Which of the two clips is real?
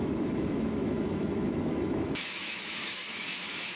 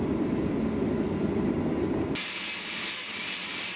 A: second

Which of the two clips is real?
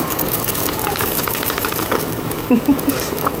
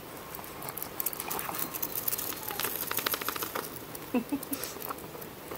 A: second